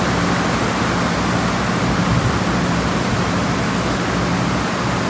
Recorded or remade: recorded